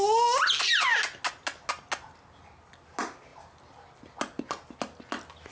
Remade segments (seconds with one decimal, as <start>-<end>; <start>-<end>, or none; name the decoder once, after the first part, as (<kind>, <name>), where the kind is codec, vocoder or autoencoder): none